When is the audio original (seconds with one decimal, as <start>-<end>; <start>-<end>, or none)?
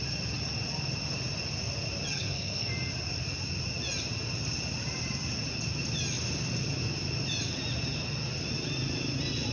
0.0-2.1; 2.7-9.5